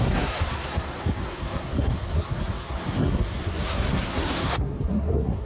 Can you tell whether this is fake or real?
fake